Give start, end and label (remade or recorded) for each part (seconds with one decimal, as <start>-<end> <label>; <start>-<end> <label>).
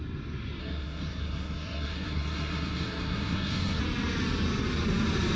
0.0-0.6 recorded; 0.6-3.8 remade; 3.8-5.4 recorded